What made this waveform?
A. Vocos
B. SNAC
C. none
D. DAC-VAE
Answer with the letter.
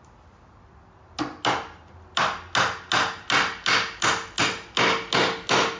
C